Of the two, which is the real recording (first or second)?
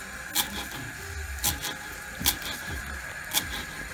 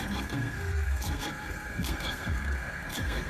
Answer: first